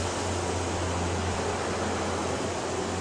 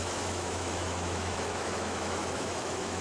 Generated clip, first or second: second